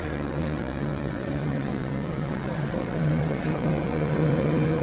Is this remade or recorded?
remade